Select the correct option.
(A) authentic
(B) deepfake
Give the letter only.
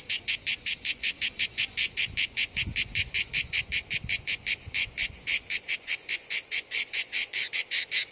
B